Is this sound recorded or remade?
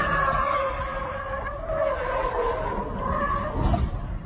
recorded